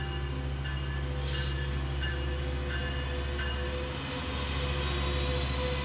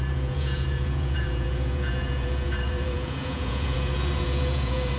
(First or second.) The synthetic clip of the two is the second